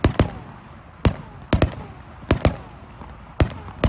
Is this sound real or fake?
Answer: real